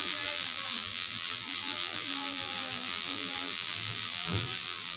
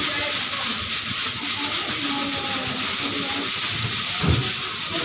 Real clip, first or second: second